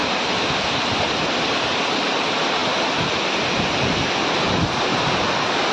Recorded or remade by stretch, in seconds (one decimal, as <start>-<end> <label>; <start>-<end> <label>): 0.0-5.7 recorded